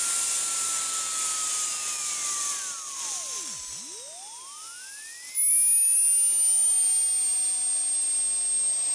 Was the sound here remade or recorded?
recorded